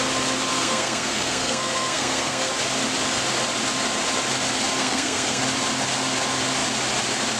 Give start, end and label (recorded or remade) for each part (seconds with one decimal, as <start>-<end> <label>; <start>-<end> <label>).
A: 0.0-0.5 recorded; 0.5-2.5 remade; 2.5-4.8 recorded; 4.8-5.4 remade; 5.4-7.4 recorded